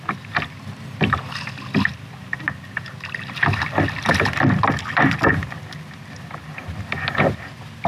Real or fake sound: real